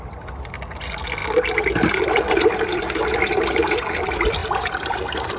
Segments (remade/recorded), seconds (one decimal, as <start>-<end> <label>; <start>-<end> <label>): 0.0-4.4 recorded; 4.4-5.0 remade; 5.0-5.4 recorded